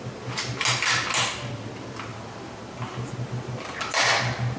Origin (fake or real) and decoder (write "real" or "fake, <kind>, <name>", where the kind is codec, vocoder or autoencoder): real